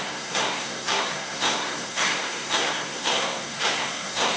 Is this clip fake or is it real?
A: fake